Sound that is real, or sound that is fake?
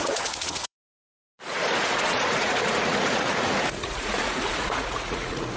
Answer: fake